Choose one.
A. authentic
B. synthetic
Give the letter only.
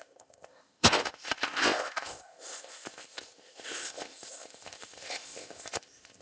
B